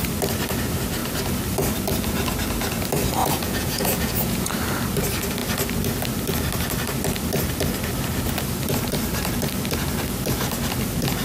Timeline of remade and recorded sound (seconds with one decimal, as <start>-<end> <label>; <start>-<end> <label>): 0.0-3.2 recorded; 3.2-4.5 remade; 4.5-11.2 recorded